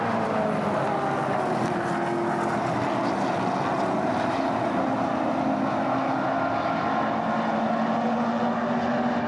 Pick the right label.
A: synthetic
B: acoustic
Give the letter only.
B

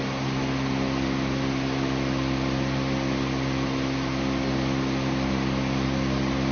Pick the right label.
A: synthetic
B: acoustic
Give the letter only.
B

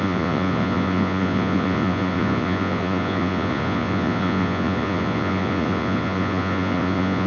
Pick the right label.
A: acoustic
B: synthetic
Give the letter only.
B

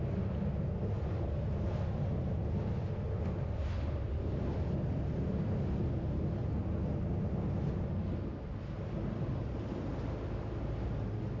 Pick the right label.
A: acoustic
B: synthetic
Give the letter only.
A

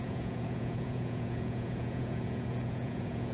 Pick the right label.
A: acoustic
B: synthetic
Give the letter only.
B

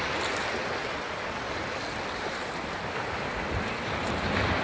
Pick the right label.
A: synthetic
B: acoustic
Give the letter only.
B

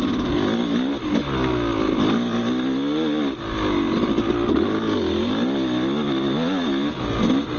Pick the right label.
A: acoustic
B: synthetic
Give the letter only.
A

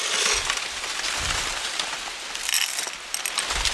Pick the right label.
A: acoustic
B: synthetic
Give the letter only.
A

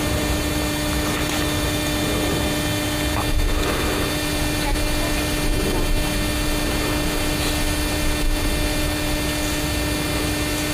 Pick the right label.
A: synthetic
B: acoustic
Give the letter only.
B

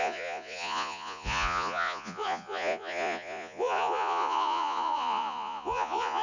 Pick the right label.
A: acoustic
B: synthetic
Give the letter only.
B